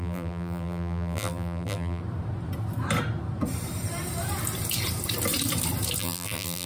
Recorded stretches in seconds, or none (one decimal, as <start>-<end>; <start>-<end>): 2.0-6.0